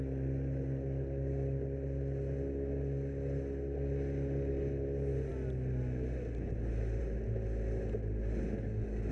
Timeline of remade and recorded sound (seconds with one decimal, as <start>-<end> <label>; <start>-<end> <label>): 0.0-9.1 recorded